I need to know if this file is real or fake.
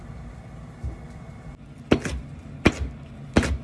real